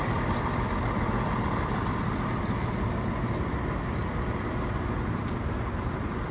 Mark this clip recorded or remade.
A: recorded